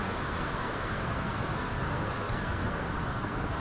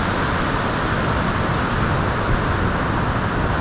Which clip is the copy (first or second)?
first